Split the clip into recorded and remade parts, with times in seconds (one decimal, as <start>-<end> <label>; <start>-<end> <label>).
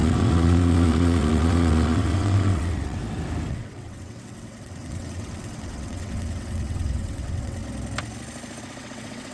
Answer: 0.0-3.0 remade; 3.0-3.5 recorded; 3.5-7.6 remade; 7.6-8.6 recorded; 8.6-9.3 remade